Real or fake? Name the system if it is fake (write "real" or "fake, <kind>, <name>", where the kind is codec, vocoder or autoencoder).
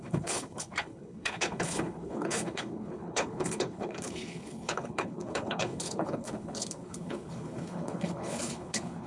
fake, codec, HILCodec